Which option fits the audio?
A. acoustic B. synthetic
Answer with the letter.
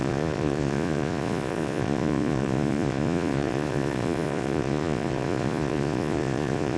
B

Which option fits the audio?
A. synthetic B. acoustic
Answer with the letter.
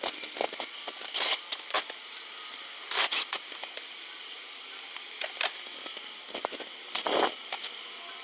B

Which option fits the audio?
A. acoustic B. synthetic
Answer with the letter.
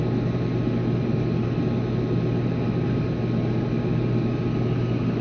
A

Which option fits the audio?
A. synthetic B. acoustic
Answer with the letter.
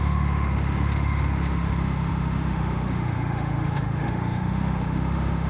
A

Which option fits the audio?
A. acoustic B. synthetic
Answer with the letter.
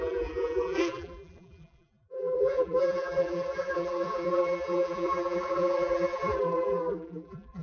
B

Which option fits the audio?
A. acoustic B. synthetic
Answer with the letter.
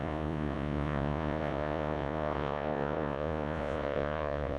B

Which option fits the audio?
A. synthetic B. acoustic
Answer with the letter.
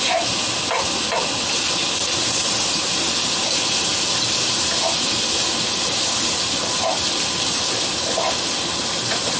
B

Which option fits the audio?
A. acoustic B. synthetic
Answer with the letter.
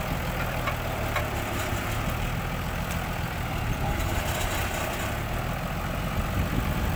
A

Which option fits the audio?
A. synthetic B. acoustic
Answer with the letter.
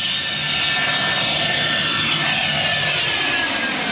B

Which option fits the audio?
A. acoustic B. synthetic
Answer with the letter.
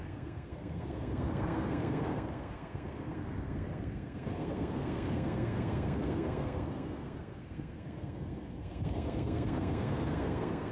B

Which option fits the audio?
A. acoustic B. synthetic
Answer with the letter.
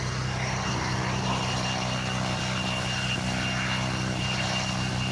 A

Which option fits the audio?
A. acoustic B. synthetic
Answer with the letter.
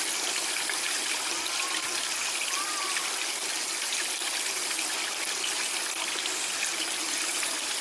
A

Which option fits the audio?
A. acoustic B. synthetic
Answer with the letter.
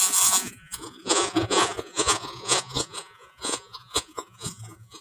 B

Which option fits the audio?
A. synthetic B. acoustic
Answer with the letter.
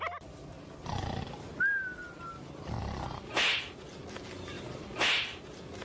B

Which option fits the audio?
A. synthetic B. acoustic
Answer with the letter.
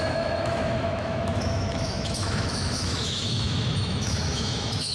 A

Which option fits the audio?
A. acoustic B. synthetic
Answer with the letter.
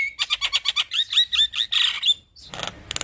A